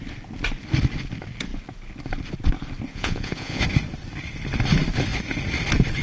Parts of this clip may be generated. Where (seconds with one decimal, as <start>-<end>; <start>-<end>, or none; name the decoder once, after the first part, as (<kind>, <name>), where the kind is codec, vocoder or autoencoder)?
2.9-3.6 (vocoder, Vocos)